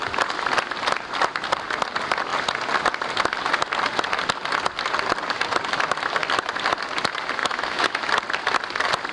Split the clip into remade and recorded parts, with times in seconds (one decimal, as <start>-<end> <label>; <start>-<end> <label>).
0.0-7.4 recorded; 7.4-8.1 remade; 8.1-9.1 recorded